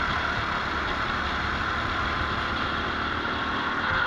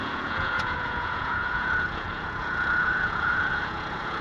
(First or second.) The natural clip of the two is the first